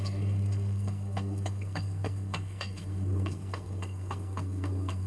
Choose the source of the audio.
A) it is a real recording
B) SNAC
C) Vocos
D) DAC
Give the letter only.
B